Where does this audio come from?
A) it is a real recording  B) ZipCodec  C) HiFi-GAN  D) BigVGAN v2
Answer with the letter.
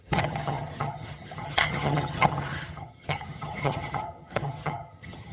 C